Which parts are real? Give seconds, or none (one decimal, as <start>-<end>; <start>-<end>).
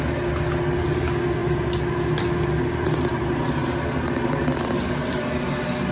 0.0-5.9